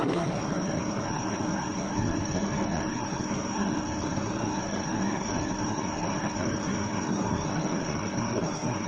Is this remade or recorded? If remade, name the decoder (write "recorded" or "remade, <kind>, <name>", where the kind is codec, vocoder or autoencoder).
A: remade, codec, SNAC